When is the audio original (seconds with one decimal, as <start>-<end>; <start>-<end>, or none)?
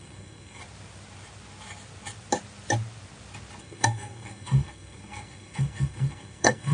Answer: 0.6-3.6